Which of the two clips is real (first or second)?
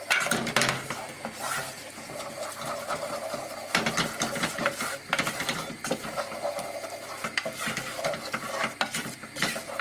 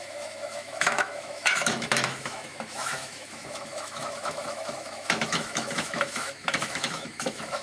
first